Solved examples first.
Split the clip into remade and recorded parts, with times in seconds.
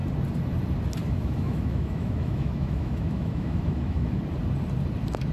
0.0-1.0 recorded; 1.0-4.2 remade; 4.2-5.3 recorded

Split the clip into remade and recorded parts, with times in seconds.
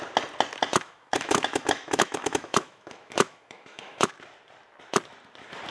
0.0-0.7 recorded; 0.7-4.1 remade; 4.1-5.7 recorded